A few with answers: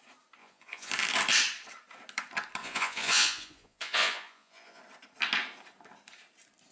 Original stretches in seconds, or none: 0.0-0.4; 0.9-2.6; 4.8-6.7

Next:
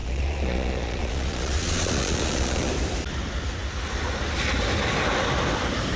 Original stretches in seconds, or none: 2.7-6.0

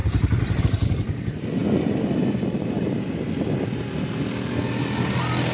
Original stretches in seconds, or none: 0.0-5.5

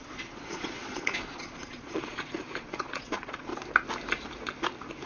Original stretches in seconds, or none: 3.5-5.1

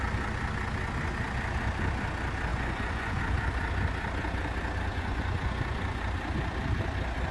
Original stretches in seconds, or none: 0.0-2.5; 3.2-4.9; 6.0-7.3